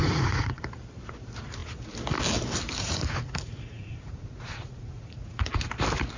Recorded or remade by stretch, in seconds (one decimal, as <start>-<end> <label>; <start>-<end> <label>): 0.0-0.6 remade; 0.6-2.8 recorded; 2.8-5.5 remade; 5.5-6.2 recorded